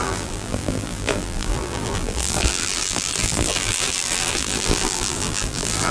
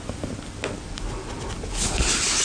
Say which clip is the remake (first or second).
first